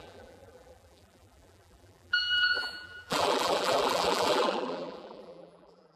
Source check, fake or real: fake